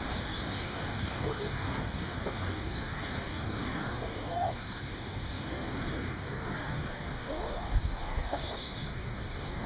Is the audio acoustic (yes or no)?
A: no